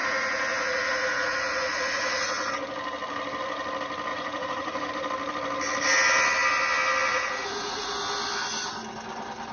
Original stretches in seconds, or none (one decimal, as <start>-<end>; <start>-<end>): 2.5-4.1; 4.9-7.1; 7.9-9.5